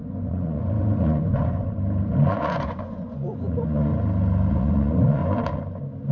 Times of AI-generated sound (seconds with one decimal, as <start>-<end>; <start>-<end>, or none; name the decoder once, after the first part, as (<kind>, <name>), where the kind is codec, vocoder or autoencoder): 0.0-1.6 (vocoder, Vocos); 2.3-3.9; 4.5-5.2